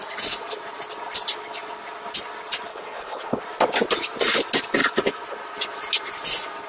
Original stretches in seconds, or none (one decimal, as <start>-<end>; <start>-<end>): 0.0-2.7; 3.4-6.7